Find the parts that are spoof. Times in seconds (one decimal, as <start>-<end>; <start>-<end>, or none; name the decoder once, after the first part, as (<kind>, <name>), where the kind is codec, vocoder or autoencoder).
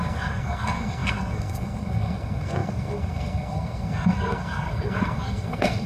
0.0-5.9 (codec, SNAC)